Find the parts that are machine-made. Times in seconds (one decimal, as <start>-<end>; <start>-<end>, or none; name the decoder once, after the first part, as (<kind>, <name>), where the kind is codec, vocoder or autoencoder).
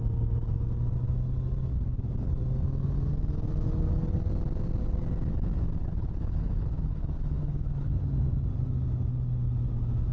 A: 5.8-8.1 (codec, HILCodec)